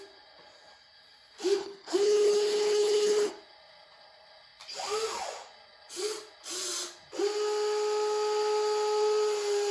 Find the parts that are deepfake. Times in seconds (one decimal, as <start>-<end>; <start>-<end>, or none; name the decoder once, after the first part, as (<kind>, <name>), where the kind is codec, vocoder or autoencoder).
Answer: 1.6-3.3 (codec, HILCodec)